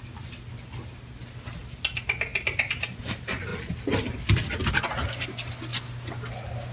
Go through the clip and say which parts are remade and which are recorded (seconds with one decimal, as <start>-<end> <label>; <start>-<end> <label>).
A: 0.0-6.7 recorded